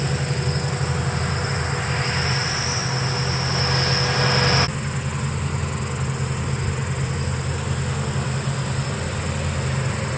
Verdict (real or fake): real